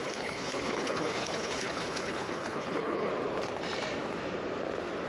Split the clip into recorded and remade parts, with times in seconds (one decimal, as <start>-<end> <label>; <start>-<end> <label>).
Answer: 0.0-3.1 remade; 3.1-5.1 recorded